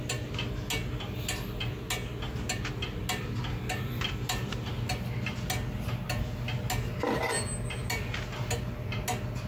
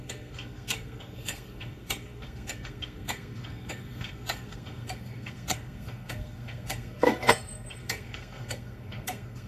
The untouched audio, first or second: first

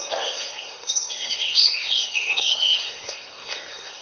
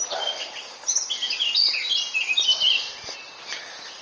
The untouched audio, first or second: second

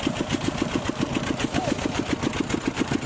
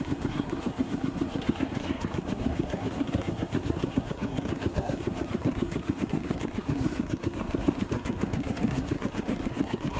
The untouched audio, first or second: first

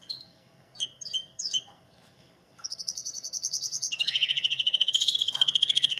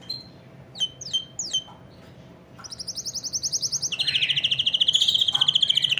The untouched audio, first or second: second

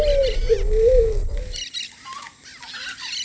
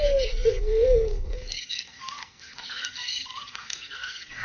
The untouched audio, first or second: first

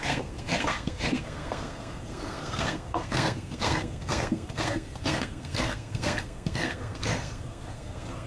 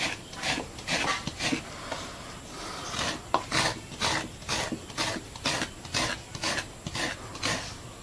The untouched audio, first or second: second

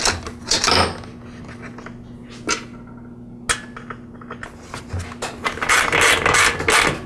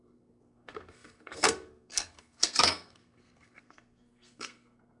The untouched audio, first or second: first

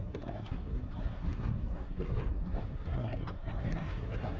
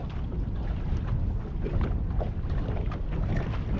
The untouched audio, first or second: second